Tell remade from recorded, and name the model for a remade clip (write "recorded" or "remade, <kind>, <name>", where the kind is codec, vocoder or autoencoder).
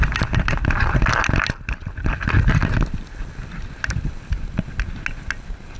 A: recorded